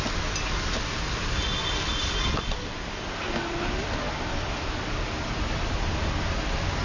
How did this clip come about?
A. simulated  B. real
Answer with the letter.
B